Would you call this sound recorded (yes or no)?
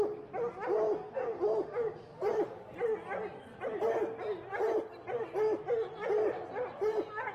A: yes